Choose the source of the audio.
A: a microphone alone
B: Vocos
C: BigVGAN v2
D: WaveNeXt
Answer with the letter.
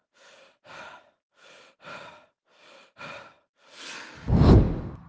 A